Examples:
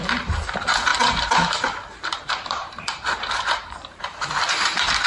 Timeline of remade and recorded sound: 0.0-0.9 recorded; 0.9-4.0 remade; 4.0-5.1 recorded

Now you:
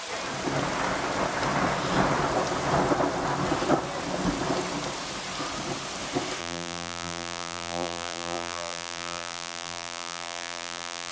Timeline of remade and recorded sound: 0.0-6.4 recorded; 6.4-11.1 remade

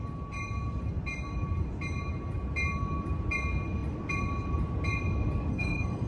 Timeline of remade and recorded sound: 0.0-5.5 recorded; 5.5-6.1 remade

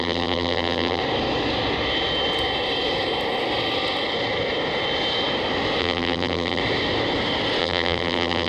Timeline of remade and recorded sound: 0.0-1.0 remade; 1.0-5.8 recorded; 5.8-6.6 remade; 6.6-7.6 recorded; 7.6-8.5 remade

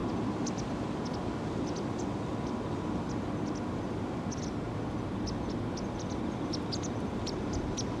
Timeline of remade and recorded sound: 0.0-8.0 recorded

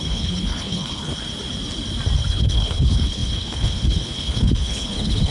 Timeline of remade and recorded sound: 0.0-1.1 remade; 1.1-2.3 recorded; 2.3-5.3 remade

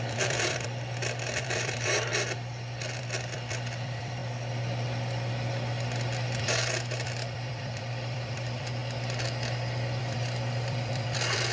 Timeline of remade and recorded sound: 0.0-2.1 remade; 2.1-3.0 recorded; 3.0-4.2 remade; 4.2-6.4 recorded; 6.4-8.8 remade; 8.8-10.0 recorded; 10.0-11.5 remade